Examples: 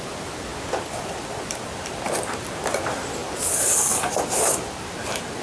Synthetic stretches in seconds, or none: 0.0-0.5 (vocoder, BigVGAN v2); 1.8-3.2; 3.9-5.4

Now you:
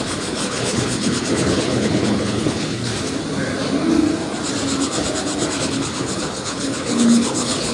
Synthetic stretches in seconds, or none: 0.0-2.9 (codec, HILCodec); 5.6-7.7

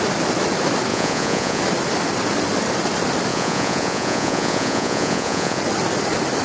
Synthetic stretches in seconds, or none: 0.9-1.6 (vocoder, Vocos); 3.3-5.6